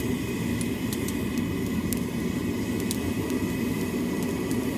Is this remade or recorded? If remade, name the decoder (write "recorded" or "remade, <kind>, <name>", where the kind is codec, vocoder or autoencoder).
recorded